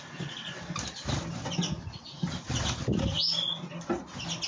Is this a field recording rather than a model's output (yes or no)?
yes